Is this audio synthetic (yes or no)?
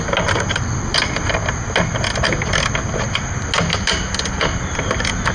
no